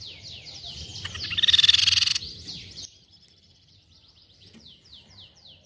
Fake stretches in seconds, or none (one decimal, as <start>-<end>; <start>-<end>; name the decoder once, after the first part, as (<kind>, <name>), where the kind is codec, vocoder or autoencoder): none